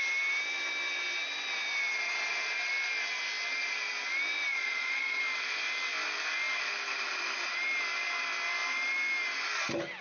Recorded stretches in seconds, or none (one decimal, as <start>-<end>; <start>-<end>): 0.0-4.5; 5.2-10.0